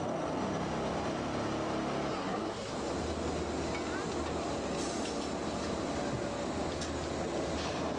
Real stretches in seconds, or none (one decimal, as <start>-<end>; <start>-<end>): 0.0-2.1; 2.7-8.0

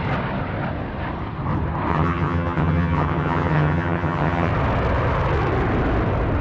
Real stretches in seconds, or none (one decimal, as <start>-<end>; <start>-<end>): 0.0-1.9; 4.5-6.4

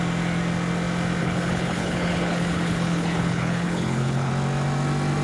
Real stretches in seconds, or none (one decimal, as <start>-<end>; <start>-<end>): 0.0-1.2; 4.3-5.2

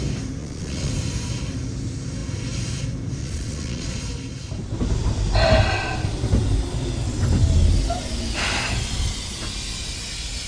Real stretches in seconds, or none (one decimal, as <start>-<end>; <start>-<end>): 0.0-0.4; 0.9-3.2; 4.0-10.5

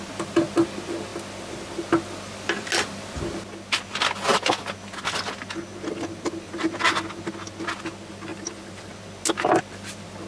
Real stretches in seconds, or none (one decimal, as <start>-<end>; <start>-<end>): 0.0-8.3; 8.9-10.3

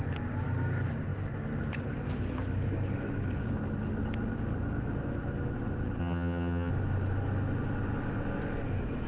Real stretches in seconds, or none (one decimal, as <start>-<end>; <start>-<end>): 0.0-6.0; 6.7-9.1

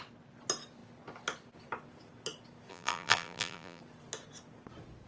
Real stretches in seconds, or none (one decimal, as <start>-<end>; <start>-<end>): 0.0-2.7; 3.8-5.1

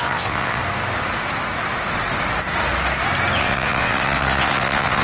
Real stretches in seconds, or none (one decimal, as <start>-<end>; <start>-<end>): 0.6-3.4